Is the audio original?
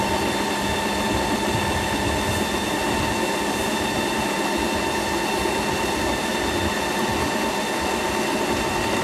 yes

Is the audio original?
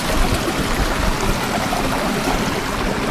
yes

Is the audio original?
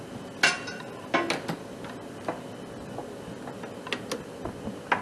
yes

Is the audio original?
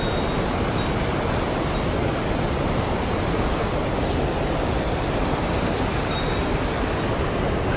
yes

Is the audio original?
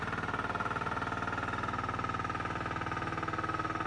yes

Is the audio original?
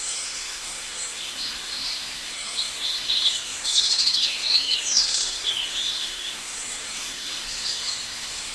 no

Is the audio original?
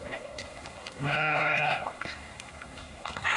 no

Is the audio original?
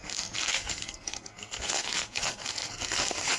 no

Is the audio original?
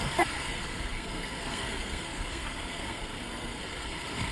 no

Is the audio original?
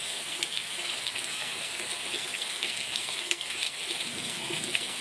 no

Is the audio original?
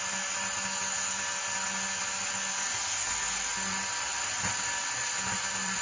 yes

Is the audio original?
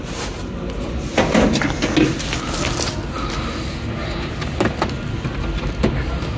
yes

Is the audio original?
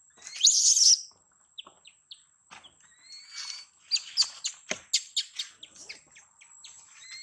yes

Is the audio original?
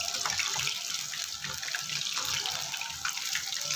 yes